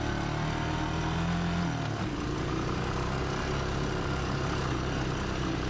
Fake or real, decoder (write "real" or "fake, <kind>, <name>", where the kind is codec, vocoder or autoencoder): real